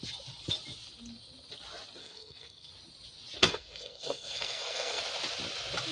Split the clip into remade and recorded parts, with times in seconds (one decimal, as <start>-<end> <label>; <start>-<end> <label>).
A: 0.0-2.0 recorded; 2.0-2.7 remade; 2.7-3.4 recorded; 3.4-5.0 remade; 5.0-5.9 recorded

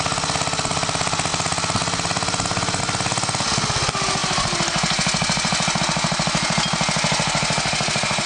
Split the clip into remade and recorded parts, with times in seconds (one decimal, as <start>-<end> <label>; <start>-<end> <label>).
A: 0.0-8.3 recorded

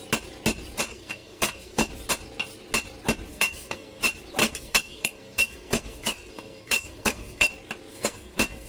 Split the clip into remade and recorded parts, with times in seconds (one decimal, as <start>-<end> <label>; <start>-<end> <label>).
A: 0.0-0.9 recorded; 0.9-1.9 remade; 1.9-3.3 recorded; 3.3-4.0 remade; 4.0-4.4 recorded; 4.4-7.5 remade; 7.5-7.9 recorded; 7.9-8.7 remade

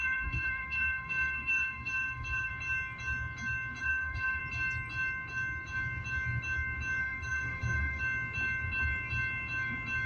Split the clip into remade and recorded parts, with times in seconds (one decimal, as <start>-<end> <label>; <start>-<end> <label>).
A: 0.0-2.5 remade; 2.5-3.8 recorded; 3.8-4.4 remade; 4.4-7.0 recorded; 7.0-8.0 remade; 8.0-10.1 recorded

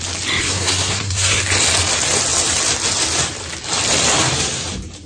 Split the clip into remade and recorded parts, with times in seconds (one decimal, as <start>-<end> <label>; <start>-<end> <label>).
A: 0.0-0.4 recorded; 0.4-1.4 remade; 1.4-5.1 recorded

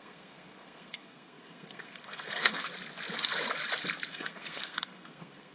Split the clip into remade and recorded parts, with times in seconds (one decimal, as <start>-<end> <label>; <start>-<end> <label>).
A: 0.0-2.7 remade; 2.7-4.1 recorded; 4.1-5.5 remade

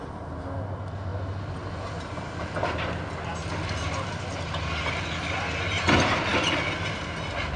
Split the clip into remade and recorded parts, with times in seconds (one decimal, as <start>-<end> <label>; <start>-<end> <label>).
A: 0.0-7.6 recorded